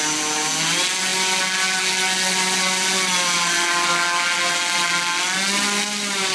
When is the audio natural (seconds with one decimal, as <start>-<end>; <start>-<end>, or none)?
0.0-6.3